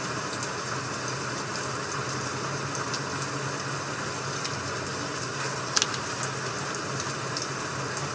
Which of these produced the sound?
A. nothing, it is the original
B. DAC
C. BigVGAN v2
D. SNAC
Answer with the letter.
A